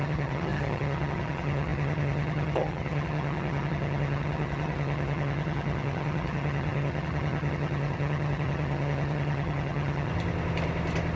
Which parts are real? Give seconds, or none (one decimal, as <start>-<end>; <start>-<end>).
10.1-11.2